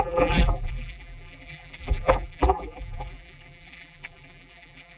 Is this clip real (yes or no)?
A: no